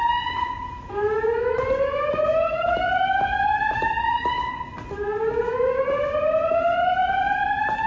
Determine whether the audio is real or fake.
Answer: real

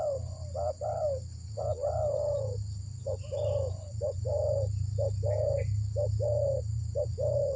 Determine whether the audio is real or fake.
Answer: real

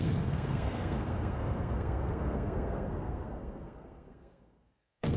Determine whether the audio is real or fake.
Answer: fake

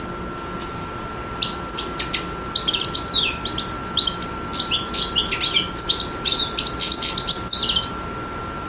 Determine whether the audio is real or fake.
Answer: real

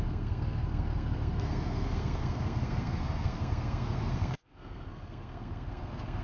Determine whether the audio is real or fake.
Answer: fake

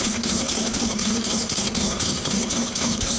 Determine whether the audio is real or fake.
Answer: fake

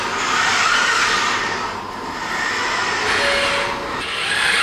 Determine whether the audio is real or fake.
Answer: real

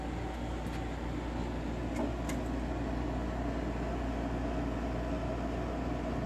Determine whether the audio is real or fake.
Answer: real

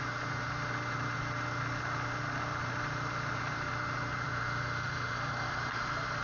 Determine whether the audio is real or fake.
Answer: real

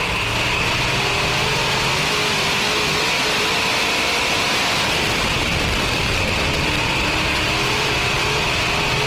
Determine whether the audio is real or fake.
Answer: real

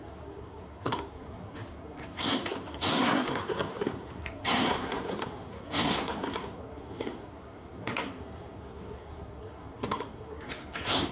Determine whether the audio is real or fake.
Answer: fake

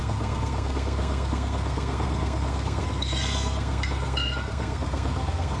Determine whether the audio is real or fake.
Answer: fake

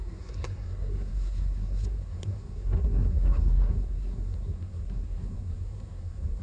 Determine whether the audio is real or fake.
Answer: fake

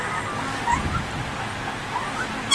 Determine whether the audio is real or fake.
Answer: real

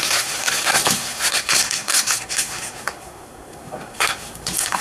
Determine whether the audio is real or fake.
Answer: fake